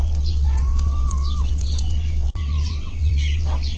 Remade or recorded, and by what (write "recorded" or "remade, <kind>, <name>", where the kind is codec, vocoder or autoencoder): remade, vocoder, WaveNeXt